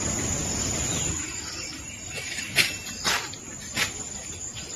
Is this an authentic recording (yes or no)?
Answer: yes